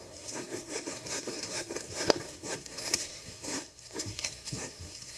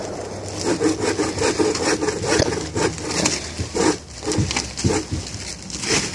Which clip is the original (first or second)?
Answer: second